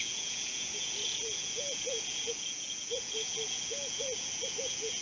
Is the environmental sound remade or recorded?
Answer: remade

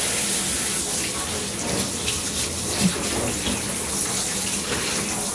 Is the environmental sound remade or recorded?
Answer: recorded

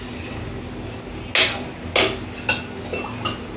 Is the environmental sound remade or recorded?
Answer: recorded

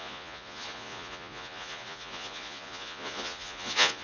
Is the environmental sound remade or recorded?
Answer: remade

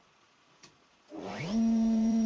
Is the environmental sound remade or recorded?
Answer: remade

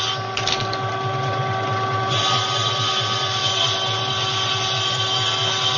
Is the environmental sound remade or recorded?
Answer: recorded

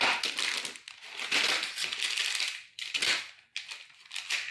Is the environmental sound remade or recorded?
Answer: recorded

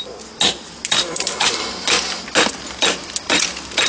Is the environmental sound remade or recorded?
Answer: recorded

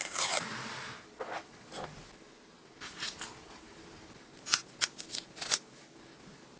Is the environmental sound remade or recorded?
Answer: recorded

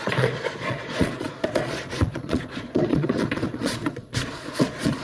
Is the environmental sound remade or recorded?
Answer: remade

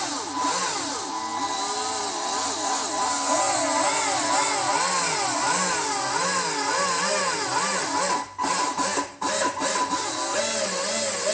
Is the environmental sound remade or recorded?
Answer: recorded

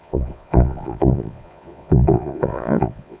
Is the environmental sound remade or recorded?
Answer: remade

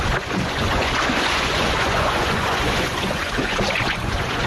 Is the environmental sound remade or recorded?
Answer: remade